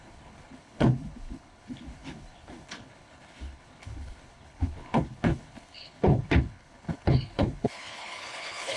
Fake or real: fake